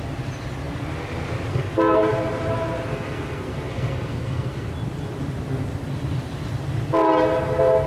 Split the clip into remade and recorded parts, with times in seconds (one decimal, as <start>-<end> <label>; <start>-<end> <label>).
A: 0.0-1.5 recorded; 1.5-2.1 remade; 2.1-2.9 recorded; 2.9-4.7 remade; 4.7-7.9 recorded